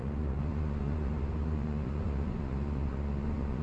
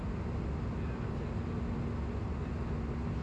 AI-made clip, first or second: first